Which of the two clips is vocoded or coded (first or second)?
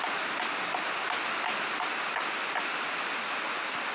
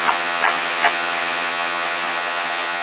second